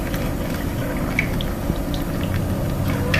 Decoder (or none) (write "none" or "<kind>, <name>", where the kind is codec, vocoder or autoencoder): none